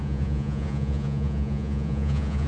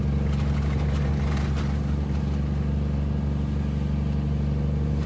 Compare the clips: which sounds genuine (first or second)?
second